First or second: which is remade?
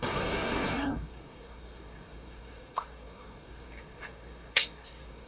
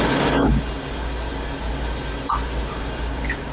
first